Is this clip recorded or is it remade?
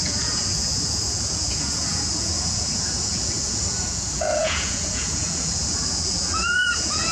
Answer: remade